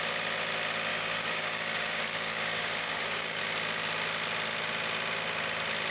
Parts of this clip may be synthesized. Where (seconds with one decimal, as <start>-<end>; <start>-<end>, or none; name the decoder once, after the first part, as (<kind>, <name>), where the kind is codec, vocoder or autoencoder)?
0.9-3.4 (codec, DAC)